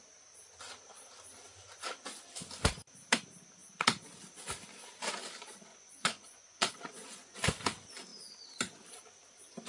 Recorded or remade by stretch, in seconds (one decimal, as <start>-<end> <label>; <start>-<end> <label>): 0.0-5.7 recorded; 5.7-7.6 remade; 7.6-9.7 recorded